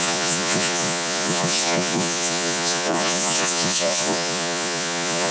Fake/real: fake